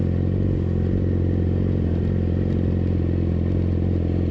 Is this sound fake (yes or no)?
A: no